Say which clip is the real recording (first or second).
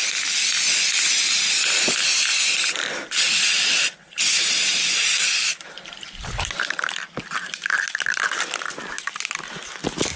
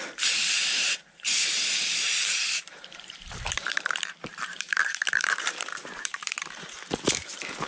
first